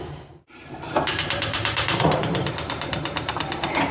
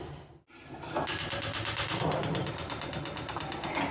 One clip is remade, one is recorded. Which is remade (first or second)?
first